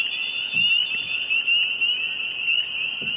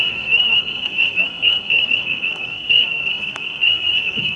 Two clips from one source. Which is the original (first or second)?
first